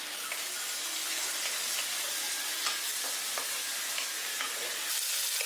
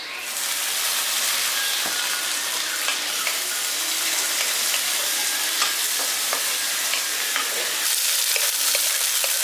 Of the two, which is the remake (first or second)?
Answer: second